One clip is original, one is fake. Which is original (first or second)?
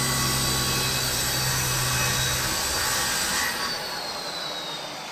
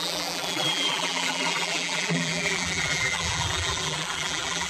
first